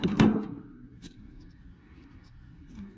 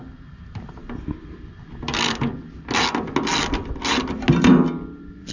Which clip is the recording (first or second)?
second